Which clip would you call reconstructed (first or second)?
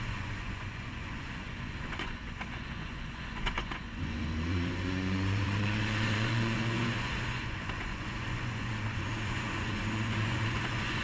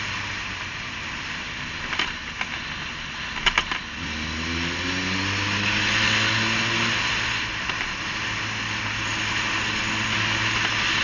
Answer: first